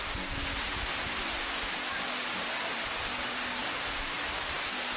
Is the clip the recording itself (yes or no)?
yes